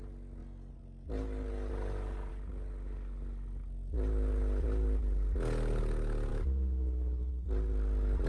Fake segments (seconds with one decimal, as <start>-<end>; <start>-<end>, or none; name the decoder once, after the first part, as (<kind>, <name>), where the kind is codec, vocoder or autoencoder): 6.3-7.3 (codec, DAC)